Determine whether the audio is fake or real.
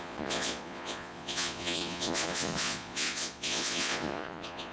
fake